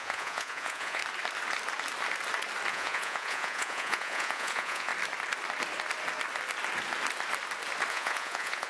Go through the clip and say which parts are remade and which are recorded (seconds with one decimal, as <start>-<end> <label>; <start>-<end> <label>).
0.0-1.0 remade; 1.0-2.7 recorded; 2.7-4.9 remade; 4.9-7.9 recorded; 7.9-8.7 remade